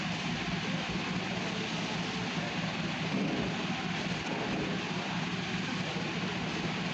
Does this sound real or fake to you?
real